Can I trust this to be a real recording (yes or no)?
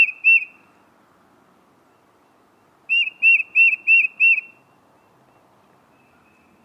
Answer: yes